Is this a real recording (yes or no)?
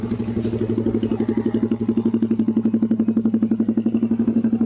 yes